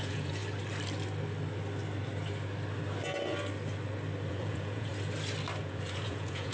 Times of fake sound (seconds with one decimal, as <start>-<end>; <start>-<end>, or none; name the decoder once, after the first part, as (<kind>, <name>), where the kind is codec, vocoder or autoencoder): 0.0-0.4 (vocoder, Vocos); 4.3-4.9; 5.6-6.5